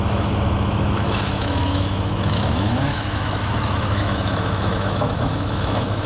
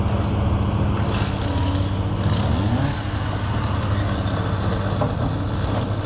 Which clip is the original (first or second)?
second